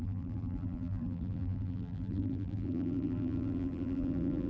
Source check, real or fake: fake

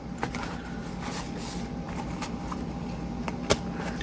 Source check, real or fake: real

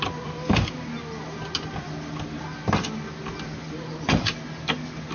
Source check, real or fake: real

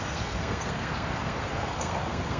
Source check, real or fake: fake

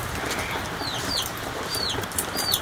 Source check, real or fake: fake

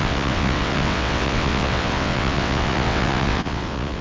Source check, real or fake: fake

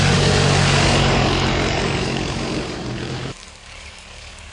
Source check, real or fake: fake